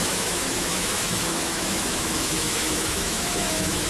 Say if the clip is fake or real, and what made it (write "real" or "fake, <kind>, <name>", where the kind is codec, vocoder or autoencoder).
fake, autoencoder, DAC-VAE